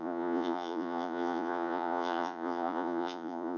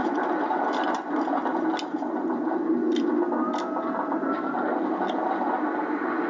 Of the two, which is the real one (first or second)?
second